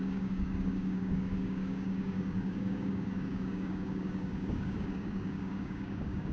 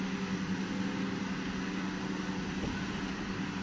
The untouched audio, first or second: second